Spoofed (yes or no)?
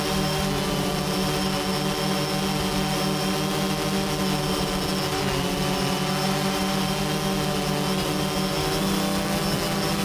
no